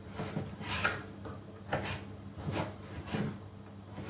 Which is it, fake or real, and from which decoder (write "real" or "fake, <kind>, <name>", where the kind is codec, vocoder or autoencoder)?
real